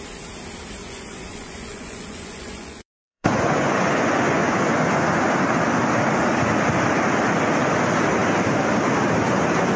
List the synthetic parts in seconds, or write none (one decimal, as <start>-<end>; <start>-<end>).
0.8-5.3